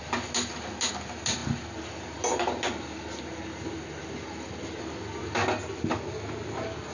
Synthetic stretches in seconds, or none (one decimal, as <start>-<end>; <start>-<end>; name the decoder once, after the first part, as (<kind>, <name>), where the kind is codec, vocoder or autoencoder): none